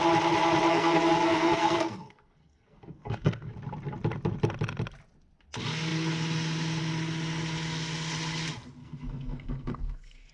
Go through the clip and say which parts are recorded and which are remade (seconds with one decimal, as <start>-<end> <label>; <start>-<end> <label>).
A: 0.0-0.7 recorded; 0.7-3.5 remade; 3.5-8.8 recorded; 8.8-10.3 remade